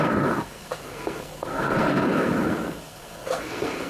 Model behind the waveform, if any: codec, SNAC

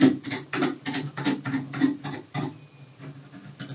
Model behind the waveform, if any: none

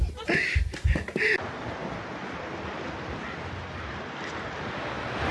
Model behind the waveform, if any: none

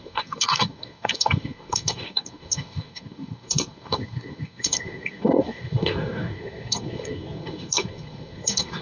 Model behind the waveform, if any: codec, SNAC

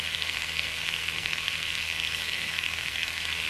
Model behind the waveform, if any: codec, SNAC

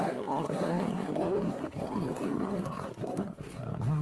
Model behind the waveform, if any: codec, SNAC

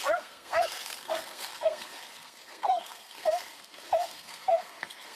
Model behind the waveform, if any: codec, SNAC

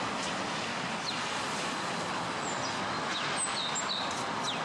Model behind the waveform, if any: none